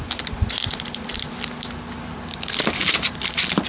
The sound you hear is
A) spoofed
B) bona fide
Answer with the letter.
B